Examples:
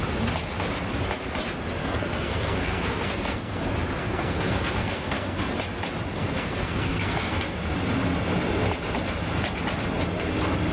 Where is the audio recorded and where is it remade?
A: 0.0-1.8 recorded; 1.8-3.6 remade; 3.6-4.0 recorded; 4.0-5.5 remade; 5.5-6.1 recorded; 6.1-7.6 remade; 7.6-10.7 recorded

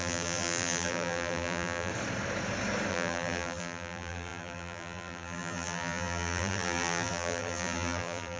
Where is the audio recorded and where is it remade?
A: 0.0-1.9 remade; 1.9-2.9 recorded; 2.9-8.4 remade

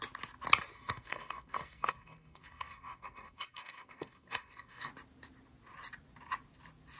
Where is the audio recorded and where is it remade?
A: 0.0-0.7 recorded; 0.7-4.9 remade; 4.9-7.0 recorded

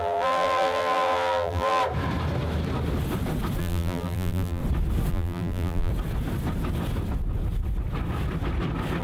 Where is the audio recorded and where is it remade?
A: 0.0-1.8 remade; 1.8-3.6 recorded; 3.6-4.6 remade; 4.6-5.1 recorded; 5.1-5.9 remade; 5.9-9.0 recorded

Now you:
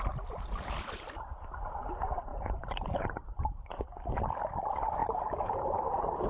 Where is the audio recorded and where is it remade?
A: 0.0-2.3 recorded; 2.3-3.4 remade; 3.4-5.0 recorded; 5.0-6.3 remade

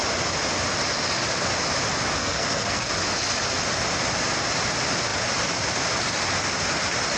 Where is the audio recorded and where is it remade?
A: 0.0-2.2 recorded; 2.2-2.9 remade; 2.9-7.2 recorded

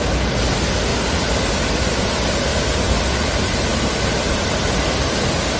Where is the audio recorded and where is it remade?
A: 0.0-5.6 recorded